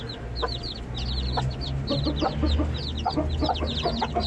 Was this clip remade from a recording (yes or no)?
no